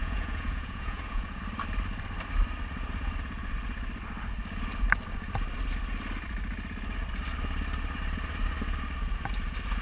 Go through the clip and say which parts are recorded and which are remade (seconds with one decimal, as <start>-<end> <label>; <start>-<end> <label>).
0.0-1.4 remade; 1.4-9.8 recorded